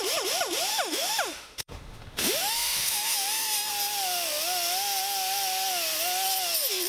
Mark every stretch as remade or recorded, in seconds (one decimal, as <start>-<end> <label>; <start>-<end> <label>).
0.0-0.7 recorded; 0.7-3.7 remade; 3.7-6.9 recorded